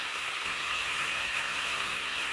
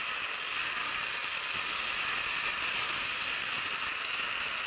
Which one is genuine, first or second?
second